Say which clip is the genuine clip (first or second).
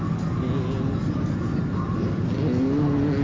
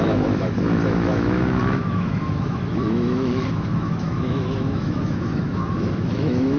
first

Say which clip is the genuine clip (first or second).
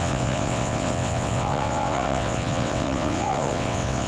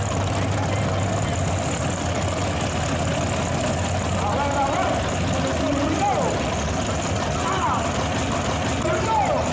second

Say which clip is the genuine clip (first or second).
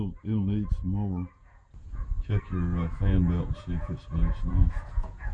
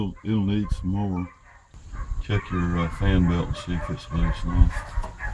second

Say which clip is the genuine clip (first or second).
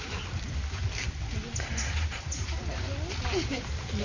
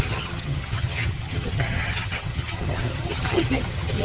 first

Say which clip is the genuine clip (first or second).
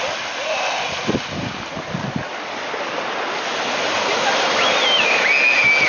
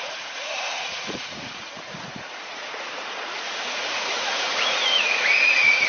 first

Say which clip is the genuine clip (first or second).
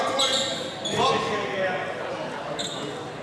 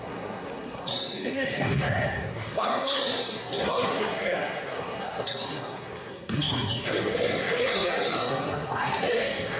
first